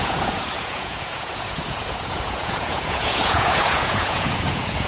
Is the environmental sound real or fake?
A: fake